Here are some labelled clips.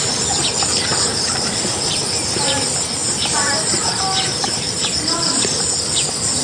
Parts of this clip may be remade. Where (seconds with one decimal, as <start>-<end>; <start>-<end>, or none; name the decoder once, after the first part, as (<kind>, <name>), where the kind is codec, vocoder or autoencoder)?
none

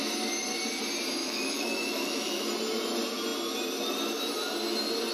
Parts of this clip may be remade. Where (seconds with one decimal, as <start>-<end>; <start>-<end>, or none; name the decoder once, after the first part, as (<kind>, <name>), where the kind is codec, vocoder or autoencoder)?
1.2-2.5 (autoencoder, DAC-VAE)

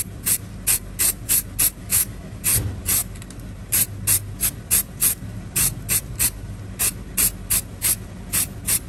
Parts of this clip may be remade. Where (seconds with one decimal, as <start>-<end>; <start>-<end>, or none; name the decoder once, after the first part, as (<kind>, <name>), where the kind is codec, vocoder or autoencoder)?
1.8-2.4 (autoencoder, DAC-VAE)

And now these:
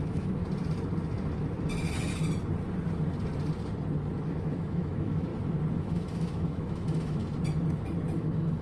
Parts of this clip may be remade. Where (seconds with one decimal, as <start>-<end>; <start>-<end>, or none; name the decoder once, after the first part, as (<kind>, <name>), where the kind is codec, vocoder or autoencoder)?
0.0-0.4 (autoencoder, DAC-VAE); 4.3-5.3; 5.8-7.2; 8.2-8.6

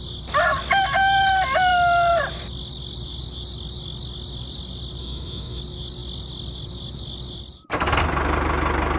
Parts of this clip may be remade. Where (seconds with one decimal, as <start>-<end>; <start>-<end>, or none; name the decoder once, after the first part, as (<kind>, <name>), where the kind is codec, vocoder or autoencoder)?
5.0-5.6 (autoencoder, DAC-VAE)